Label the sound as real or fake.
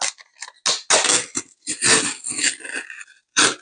real